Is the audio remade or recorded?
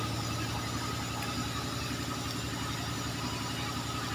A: recorded